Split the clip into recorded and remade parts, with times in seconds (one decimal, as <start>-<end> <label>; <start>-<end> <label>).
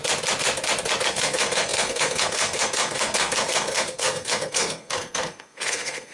0.0-1.1 recorded; 1.1-6.1 remade